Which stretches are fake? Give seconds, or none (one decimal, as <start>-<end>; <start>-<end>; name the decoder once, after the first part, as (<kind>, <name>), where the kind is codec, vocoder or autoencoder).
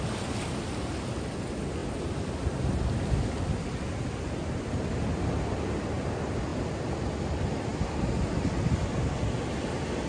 none